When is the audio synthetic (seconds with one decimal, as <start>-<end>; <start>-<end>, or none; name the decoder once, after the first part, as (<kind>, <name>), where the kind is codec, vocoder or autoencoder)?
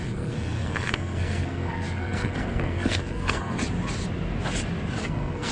0.0-3.6 (codec, SNAC); 5.0-5.5